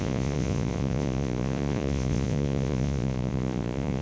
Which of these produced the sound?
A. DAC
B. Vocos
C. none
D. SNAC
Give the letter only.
B